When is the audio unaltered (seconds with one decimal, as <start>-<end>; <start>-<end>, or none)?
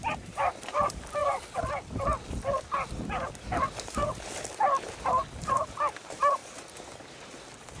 1.2-3.4; 4.0-5.4